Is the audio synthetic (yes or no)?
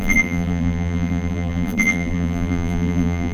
yes